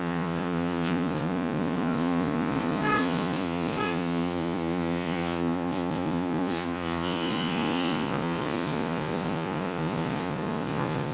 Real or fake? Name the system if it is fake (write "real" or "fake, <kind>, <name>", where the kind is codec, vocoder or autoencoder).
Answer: fake, vocoder, Vocos